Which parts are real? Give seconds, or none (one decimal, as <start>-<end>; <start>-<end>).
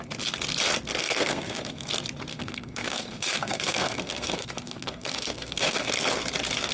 0.0-1.0; 1.9-2.3; 5.9-6.7